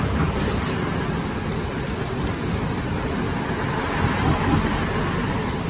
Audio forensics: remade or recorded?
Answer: recorded